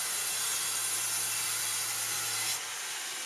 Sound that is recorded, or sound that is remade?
recorded